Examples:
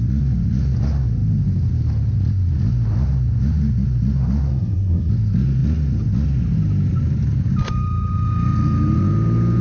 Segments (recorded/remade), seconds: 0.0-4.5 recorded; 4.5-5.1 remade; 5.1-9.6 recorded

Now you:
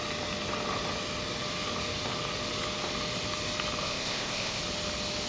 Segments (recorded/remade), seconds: 0.0-3.8 recorded; 3.8-4.6 remade; 4.6-5.3 recorded